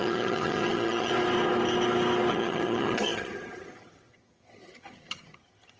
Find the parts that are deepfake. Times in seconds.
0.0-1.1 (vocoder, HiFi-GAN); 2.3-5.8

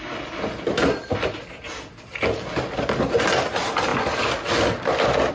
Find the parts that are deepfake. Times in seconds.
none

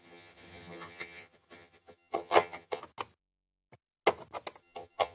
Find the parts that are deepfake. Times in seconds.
0.0-2.8 (vocoder, HiFi-GAN); 4.6-5.1

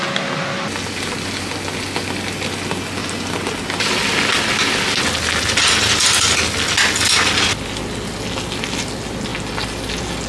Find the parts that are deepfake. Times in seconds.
none